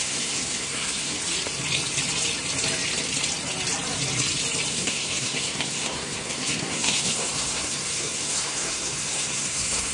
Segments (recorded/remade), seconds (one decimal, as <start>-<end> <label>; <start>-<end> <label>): 0.0-1.2 remade; 1.2-4.7 recorded; 4.7-9.9 remade